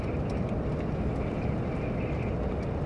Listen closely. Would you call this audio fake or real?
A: real